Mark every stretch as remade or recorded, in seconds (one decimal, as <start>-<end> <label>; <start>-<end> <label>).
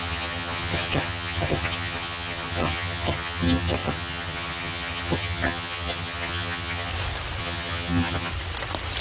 0.0-6.9 remade; 6.9-7.4 recorded; 7.4-8.3 remade; 8.3-9.0 recorded